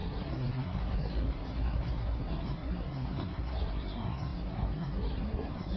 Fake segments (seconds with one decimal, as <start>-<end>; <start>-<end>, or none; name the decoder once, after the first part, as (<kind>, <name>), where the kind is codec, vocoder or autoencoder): 0.0-5.8 (codec, SNAC)